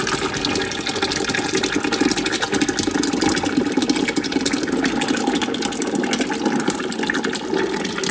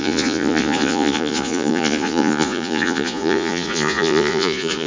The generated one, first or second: second